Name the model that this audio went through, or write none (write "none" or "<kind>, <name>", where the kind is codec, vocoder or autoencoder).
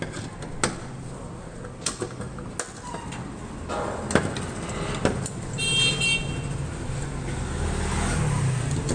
none